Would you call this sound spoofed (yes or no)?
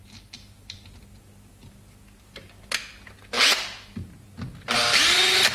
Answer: no